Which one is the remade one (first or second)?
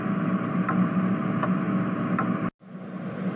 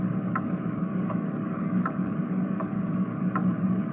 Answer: second